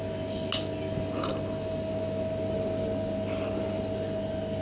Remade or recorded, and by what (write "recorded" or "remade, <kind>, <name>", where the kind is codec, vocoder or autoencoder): recorded